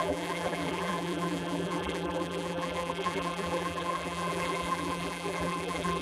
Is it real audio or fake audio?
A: fake